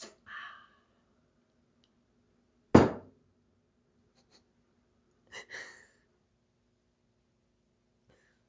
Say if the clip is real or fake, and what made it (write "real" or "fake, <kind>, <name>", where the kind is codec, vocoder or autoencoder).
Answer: real